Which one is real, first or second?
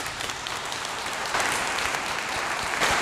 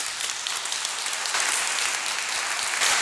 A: second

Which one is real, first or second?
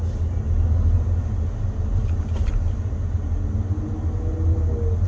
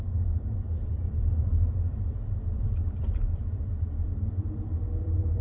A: first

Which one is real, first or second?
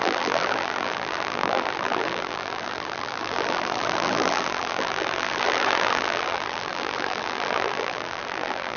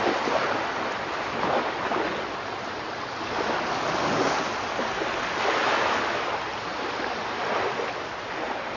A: second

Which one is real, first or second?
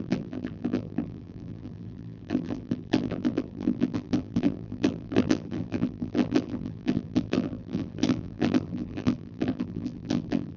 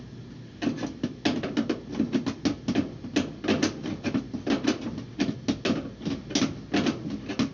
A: second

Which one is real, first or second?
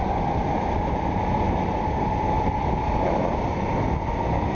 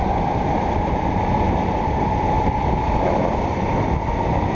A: first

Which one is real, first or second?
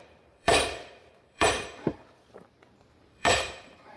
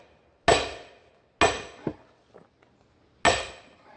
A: second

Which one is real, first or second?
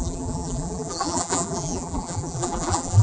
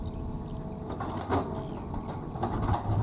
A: second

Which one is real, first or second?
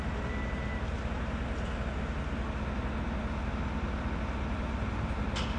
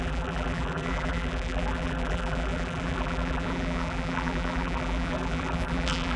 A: first